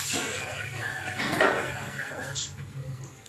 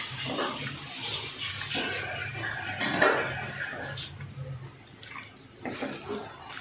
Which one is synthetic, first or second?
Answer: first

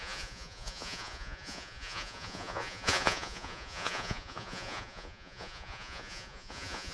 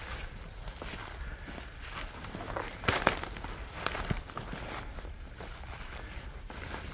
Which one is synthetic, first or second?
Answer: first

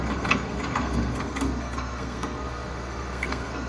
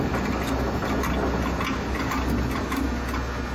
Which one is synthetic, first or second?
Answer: first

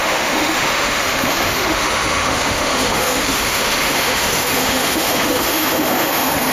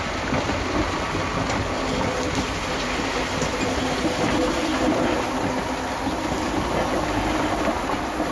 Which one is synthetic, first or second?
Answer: first